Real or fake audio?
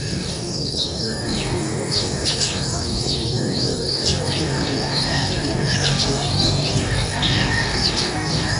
fake